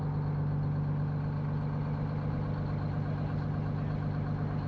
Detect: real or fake real